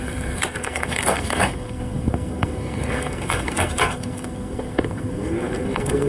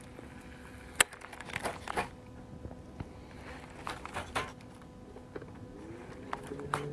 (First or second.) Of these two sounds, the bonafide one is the second